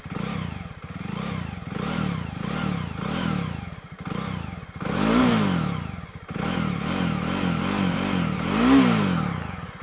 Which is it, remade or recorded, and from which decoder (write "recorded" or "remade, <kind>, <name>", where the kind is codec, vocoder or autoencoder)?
recorded